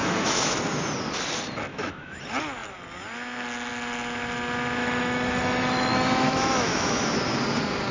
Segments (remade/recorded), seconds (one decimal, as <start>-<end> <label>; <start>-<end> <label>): 0.0-0.6 remade; 0.6-1.7 recorded; 1.7-2.2 remade; 2.2-4.8 recorded; 4.8-7.0 remade; 7.0-7.9 recorded